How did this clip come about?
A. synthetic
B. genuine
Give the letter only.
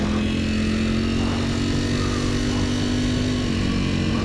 B